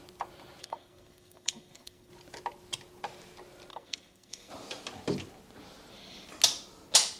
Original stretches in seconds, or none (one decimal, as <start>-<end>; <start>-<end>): 0.0-0.6; 2.1-3.7; 4.5-7.2